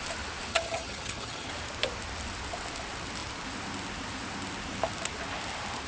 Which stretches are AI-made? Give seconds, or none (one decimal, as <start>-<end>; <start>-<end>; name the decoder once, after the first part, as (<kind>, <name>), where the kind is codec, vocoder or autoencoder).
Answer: 0.5-1.5 (vocoder, HiFi-GAN)